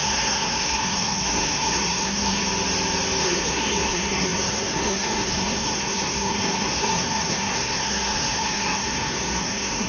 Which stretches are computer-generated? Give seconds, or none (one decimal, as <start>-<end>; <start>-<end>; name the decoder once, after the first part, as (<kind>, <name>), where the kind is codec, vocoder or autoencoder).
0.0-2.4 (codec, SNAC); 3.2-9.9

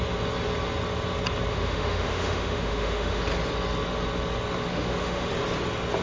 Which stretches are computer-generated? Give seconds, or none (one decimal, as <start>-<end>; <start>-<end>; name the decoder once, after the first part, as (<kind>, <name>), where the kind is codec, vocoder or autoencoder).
1.5-3.2 (autoencoder, DAC-VAE); 4.7-5.3

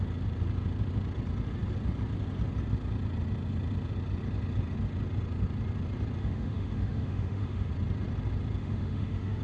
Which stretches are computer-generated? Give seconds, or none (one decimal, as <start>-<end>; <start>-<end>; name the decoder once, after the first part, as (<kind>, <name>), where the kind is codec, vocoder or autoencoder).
6.2-7.7 (autoencoder, DAC-VAE); 8.6-9.4

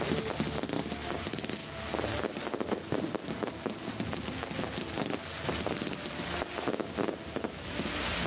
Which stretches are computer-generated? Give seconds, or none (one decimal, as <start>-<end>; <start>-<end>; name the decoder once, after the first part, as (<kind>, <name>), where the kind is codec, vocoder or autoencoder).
none